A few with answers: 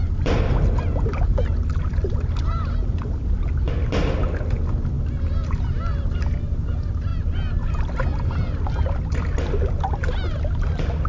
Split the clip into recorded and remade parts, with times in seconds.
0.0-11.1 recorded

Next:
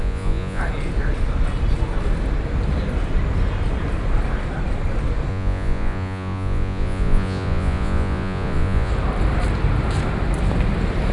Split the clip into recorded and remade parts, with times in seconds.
0.0-0.6 remade; 0.6-5.3 recorded; 5.3-8.9 remade; 8.9-11.1 recorded

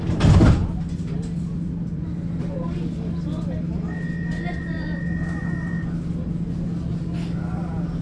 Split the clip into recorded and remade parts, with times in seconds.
0.0-8.0 recorded

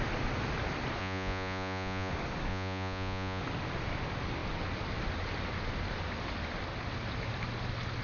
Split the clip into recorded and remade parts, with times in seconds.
0.0-1.0 recorded; 1.0-2.1 remade; 2.1-2.5 recorded; 2.5-3.4 remade; 3.4-8.0 recorded

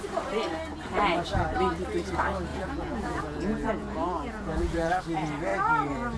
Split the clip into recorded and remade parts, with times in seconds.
0.0-2.5 recorded; 2.5-5.0 remade; 5.0-6.2 recorded